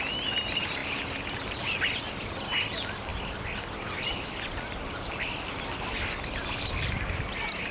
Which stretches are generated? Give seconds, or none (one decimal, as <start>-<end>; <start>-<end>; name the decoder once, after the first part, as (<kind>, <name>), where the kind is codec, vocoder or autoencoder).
none